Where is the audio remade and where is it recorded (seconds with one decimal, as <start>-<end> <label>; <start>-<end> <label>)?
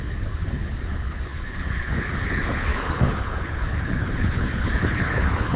0.0-5.6 remade